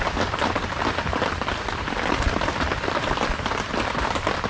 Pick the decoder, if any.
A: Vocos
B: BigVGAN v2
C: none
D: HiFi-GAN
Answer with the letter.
B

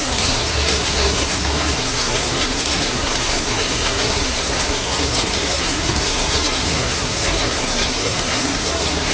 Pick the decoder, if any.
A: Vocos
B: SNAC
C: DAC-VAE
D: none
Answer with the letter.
B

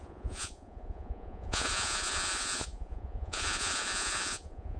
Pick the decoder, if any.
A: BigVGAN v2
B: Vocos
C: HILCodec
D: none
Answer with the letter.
B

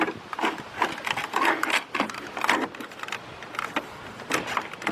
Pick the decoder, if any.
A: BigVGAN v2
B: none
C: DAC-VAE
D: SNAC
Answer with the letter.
B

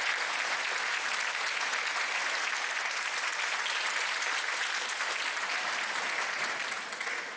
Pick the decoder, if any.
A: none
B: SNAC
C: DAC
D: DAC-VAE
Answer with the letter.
A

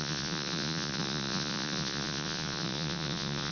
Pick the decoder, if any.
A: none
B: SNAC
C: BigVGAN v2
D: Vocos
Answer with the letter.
D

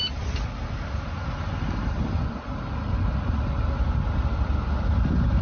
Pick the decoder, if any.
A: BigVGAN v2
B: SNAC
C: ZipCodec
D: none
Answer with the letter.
A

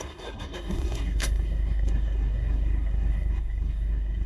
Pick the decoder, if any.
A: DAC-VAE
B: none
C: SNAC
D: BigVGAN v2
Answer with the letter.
C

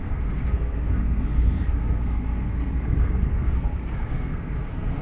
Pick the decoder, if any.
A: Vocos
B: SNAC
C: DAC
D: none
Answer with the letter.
B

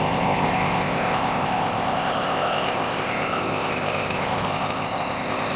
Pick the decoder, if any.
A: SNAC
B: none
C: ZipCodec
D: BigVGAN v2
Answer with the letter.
C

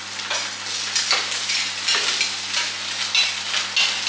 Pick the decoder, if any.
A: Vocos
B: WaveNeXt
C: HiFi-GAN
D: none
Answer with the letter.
D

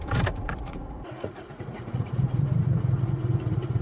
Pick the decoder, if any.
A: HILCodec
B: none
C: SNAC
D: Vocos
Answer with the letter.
D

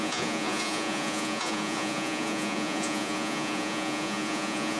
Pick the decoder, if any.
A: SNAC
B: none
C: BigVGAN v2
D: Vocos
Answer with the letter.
D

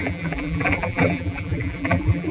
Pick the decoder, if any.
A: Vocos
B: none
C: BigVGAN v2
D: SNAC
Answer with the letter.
C